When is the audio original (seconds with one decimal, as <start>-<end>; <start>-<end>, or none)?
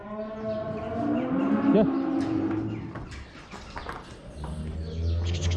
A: 0.0-5.6